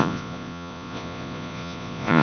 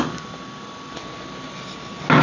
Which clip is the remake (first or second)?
first